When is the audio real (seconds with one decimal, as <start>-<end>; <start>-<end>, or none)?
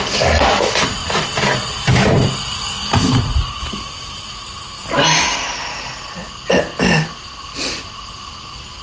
0.0-8.8